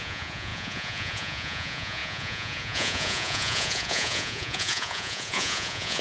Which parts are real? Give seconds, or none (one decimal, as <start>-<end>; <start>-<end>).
none